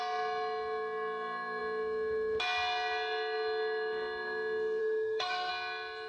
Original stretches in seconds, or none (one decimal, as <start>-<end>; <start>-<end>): 0.0-4.8; 5.5-6.1